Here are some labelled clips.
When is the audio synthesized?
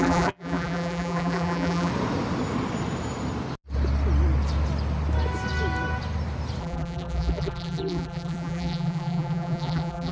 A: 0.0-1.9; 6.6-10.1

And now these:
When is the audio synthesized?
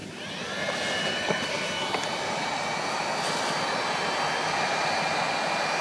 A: 0.0-1.5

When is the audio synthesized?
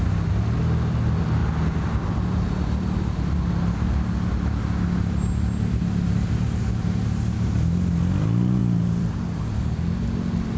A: 8.6-9.7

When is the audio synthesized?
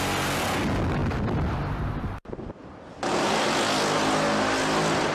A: 1.0-2.7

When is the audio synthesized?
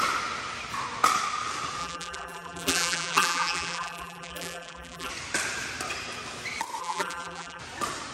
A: 1.8-5.1; 6.8-7.6